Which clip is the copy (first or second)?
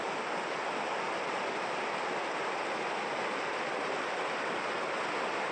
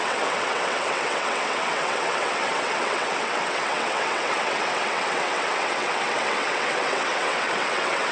second